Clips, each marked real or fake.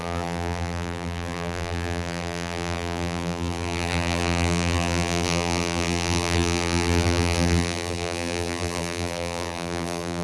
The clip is fake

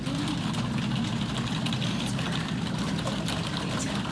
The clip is real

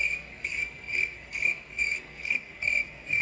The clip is fake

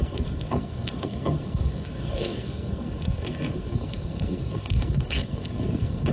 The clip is fake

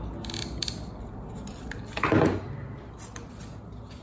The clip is real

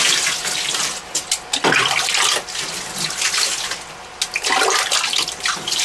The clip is real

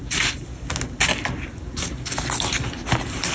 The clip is real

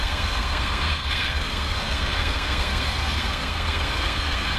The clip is fake